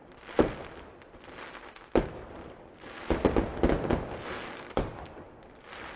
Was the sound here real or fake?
real